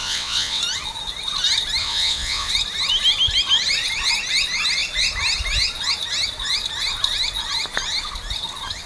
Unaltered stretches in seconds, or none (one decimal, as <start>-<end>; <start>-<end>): 0.6-1.8; 2.5-8.9